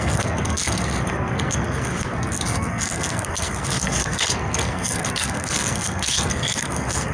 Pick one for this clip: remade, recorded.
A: remade